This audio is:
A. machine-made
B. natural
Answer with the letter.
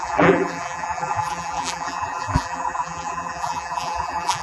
A